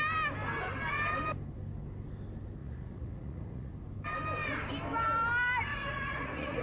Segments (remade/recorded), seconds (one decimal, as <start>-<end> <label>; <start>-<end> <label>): 0.0-2.6 recorded; 2.6-3.7 remade; 3.7-5.7 recorded; 5.7-6.6 remade